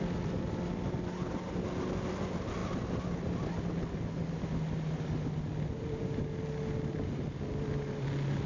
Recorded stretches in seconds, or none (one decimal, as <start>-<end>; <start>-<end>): 0.0-8.5

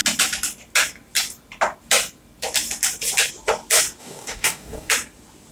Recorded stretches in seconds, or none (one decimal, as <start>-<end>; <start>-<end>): 0.0-4.0; 4.9-5.5

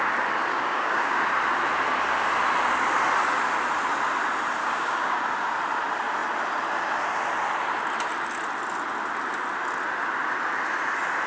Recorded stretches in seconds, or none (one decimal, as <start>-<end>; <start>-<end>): 0.0-0.5; 1.3-4.6; 5.2-11.3

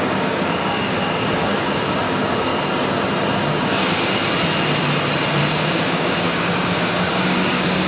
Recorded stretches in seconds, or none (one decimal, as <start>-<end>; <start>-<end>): 2.5-3.6; 4.2-5.4

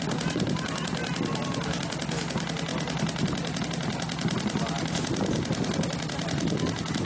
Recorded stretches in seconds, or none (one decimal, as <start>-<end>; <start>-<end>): 0.0-7.0

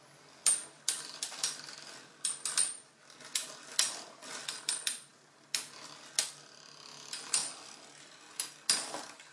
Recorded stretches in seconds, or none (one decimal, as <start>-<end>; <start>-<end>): 0.0-9.3

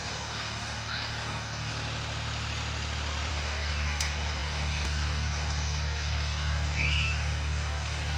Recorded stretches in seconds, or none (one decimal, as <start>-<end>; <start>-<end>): 1.7-3.3